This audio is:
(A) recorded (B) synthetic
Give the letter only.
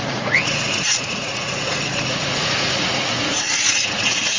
B